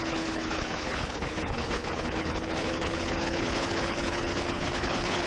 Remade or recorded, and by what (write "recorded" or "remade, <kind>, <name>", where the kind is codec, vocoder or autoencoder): remade, codec, HILCodec